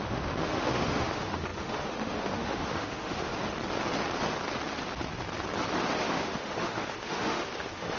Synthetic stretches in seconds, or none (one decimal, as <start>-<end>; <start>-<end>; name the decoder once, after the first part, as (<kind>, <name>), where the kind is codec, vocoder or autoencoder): 0.0-3.3 (autoencoder, DAC-VAE); 6.0-8.0